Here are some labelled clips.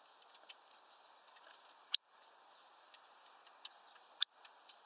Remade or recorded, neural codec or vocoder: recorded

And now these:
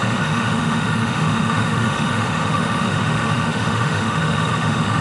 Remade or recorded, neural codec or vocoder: remade, autoencoder, DAC-VAE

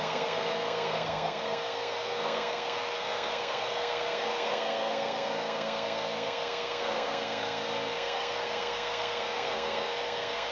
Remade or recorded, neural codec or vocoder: remade, codec, SNAC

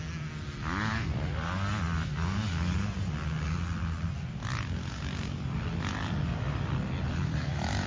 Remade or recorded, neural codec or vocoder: recorded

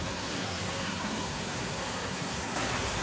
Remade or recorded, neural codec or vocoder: remade, codec, SNAC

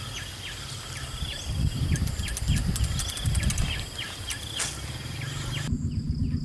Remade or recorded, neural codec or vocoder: recorded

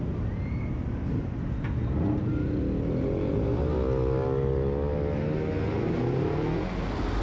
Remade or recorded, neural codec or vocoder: recorded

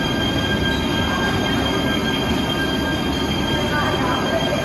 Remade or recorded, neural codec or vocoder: recorded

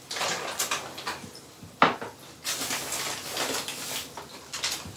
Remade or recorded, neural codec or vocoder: recorded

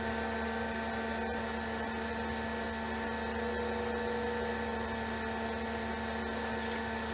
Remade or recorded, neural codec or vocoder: recorded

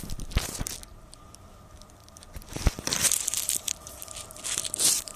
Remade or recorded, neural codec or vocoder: remade, vocoder, BigVGAN v2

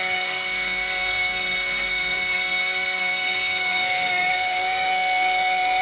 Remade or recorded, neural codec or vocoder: remade, codec, SNAC